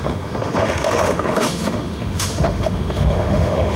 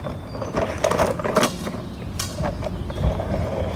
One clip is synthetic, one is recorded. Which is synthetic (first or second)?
first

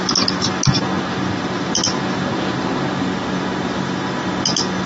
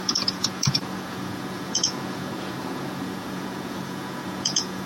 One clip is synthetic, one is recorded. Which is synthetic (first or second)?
second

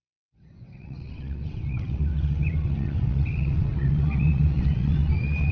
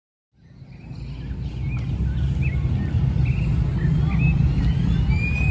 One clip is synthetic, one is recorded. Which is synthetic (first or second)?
first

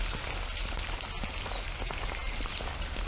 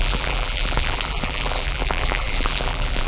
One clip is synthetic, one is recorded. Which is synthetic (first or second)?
second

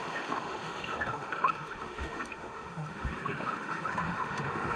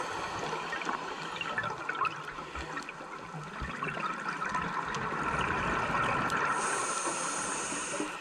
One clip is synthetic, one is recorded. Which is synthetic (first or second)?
first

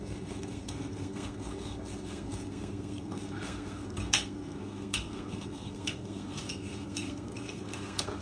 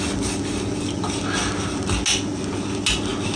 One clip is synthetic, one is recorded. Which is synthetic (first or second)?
first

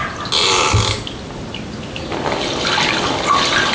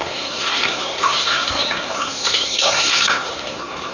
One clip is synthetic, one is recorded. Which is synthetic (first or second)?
second